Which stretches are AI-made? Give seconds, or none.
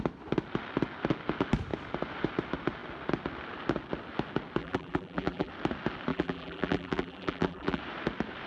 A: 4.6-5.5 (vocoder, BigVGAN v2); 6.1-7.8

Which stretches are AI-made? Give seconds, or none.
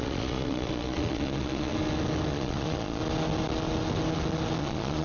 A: 0.0-1.7 (vocoder, Vocos); 2.3-3.0; 4.6-5.0